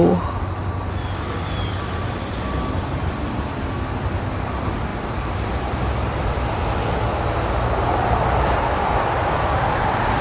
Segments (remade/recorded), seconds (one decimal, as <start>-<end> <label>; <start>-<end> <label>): 0.0-10.2 remade